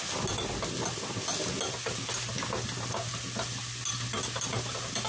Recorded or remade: recorded